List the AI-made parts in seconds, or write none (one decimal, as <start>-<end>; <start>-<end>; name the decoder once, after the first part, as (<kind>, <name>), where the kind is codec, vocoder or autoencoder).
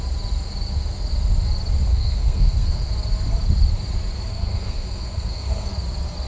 1.9-2.9 (codec, SNAC); 4.3-5.7